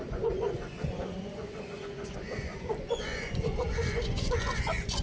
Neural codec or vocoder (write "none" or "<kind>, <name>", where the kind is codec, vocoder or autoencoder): vocoder, Vocos